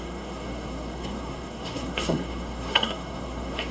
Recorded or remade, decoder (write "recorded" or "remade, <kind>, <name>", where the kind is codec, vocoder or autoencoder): remade, codec, SNAC